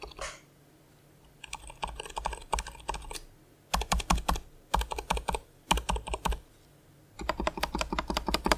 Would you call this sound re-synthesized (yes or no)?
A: no